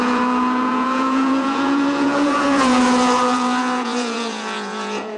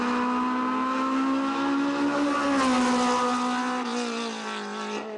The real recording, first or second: second